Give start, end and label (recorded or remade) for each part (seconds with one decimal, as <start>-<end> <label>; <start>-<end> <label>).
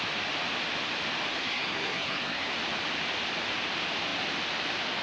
0.0-1.3 recorded; 1.3-2.5 remade; 2.5-5.0 recorded